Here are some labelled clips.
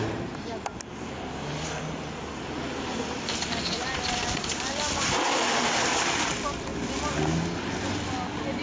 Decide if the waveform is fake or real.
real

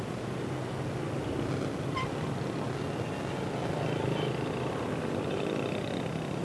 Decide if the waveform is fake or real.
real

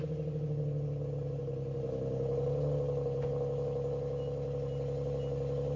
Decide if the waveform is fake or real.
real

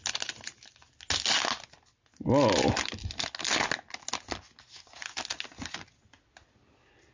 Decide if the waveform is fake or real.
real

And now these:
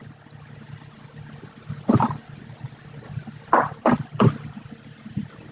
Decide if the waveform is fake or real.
real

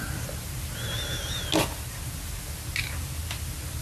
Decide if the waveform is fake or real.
real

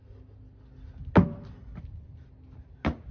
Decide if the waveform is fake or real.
real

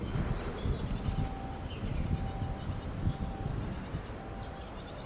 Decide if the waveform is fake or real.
real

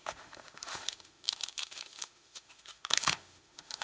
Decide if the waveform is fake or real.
fake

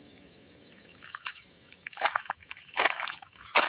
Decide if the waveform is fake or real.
fake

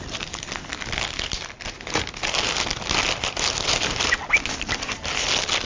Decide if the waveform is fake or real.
real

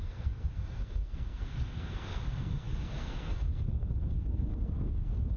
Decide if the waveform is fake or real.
fake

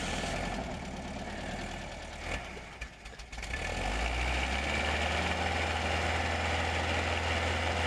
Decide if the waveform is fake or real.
real